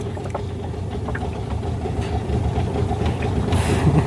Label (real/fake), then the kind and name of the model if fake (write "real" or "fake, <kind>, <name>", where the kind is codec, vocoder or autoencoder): real